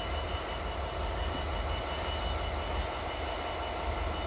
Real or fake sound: real